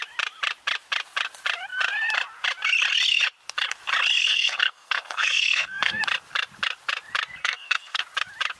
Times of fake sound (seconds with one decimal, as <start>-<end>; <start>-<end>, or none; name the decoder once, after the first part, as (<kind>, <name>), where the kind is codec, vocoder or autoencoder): 4.2-6.0 (codec, SNAC); 7.4-8.0